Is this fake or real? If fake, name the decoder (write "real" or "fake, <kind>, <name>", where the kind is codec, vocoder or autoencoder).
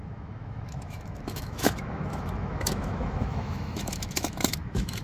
fake, autoencoder, DAC-VAE